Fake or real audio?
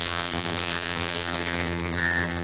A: fake